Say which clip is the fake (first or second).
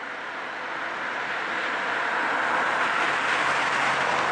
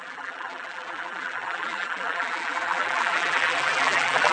second